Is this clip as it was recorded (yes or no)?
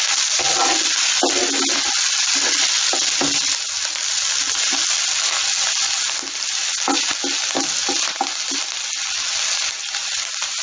yes